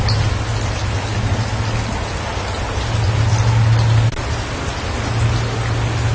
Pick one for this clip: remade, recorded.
recorded